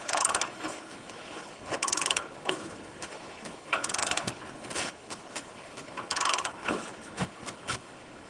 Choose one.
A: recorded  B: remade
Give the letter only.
B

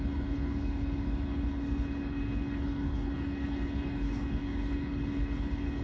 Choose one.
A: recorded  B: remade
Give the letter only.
B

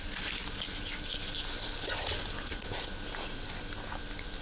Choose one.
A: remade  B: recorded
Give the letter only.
B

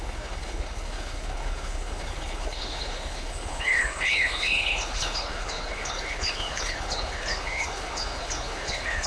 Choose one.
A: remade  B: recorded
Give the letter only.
A